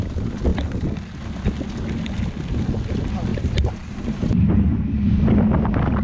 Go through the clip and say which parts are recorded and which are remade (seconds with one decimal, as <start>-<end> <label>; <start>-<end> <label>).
0.0-3.3 recorded; 3.3-4.5 remade; 4.5-6.0 recorded